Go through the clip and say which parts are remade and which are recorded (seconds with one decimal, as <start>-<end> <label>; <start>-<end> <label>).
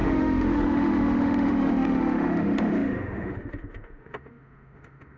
0.0-5.2 remade